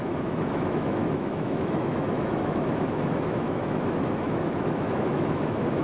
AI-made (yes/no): yes